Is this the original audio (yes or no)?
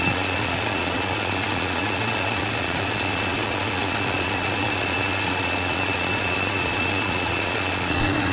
no